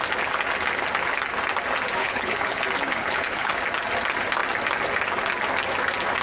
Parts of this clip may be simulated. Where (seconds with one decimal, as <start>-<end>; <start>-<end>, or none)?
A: 2.0-2.6; 3.0-3.5